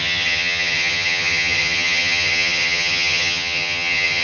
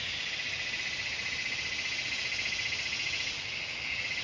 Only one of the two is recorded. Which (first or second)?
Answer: second